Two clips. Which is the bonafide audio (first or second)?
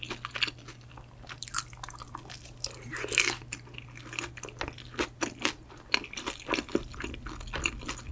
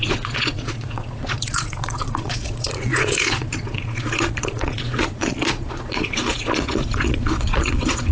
first